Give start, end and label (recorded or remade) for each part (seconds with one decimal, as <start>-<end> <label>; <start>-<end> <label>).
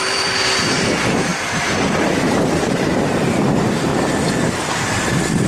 0.0-3.9 remade; 3.9-4.7 recorded; 4.7-5.5 remade